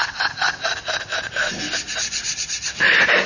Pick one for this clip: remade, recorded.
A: recorded